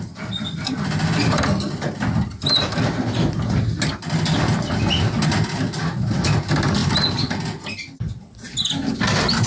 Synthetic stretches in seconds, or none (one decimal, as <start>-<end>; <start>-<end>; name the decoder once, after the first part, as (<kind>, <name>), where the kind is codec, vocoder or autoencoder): none